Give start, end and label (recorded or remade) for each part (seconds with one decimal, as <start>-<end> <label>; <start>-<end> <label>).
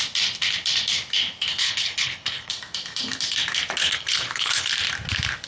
0.0-1.5 recorded; 1.5-2.5 remade; 2.5-3.8 recorded; 3.8-4.7 remade; 4.7-5.5 recorded